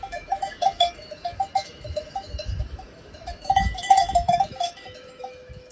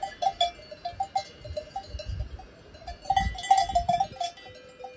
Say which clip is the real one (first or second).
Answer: second